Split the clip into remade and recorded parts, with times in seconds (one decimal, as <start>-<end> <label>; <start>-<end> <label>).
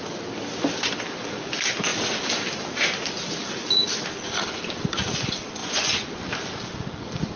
0.0-5.6 recorded; 5.6-6.3 remade; 6.3-7.4 recorded